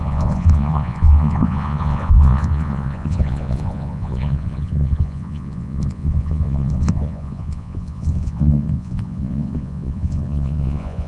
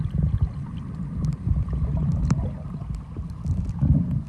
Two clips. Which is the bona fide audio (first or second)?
second